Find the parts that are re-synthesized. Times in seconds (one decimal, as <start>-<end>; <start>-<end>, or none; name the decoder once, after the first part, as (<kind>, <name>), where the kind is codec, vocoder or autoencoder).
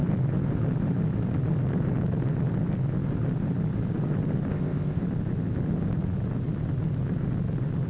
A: 4.5-5.0 (codec, ZipCodec)